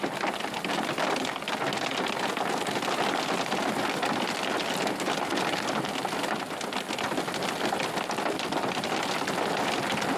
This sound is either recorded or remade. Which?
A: recorded